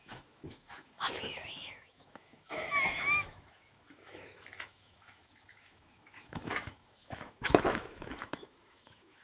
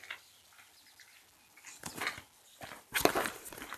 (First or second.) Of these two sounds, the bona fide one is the second